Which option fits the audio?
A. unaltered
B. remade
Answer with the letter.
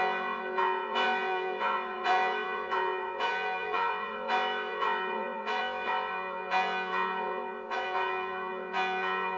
B